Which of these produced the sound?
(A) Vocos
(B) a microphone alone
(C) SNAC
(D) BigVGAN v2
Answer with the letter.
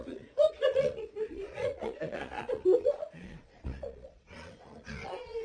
A